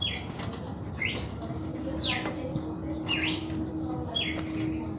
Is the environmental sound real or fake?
real